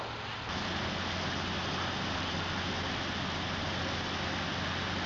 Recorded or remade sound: recorded